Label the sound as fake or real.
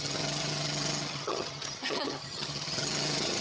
fake